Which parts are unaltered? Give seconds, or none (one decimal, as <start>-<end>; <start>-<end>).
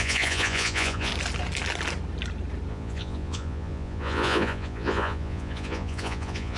1.1-2.7